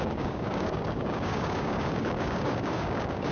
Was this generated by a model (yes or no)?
yes